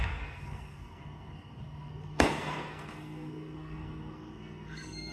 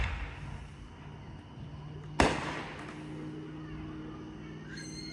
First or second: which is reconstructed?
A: first